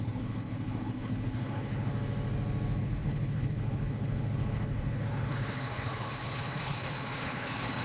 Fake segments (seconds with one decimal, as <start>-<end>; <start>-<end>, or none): 0.0-1.9; 2.8-7.8